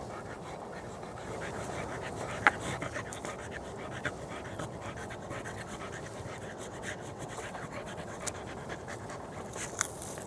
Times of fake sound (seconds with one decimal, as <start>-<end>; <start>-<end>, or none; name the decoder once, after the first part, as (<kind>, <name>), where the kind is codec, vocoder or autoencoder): 5.0-5.8 (vocoder, WaveNeXt); 6.4-8.2